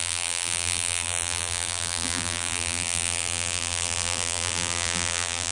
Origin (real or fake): fake